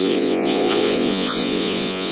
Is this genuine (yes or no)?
no